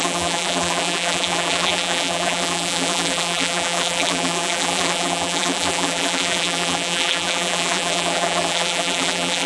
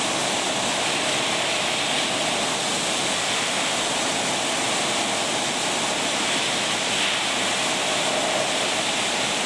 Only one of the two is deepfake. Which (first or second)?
first